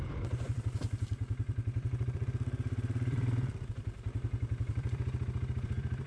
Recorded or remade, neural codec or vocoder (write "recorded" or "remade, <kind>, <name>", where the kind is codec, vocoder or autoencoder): remade, vocoder, BigVGAN v2